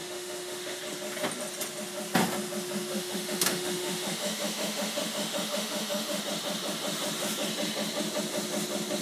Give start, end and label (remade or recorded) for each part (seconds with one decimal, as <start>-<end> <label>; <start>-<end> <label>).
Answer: 0.0-0.8 remade; 0.8-2.9 recorded; 2.9-6.2 remade; 6.2-9.0 recorded